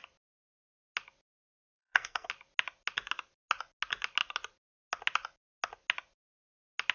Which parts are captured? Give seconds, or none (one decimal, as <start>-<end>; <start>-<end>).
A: 0.0-1.3; 2.3-6.9